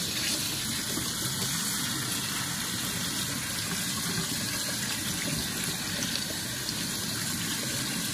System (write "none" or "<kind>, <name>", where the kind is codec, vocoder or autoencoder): none